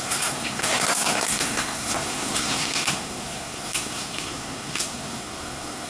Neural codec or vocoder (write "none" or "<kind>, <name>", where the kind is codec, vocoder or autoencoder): codec, SNAC